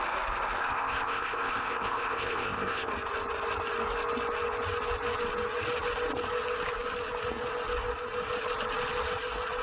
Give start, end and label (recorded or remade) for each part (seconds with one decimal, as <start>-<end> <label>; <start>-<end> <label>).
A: 0.0-0.6 recorded; 0.6-2.9 remade; 2.9-9.6 recorded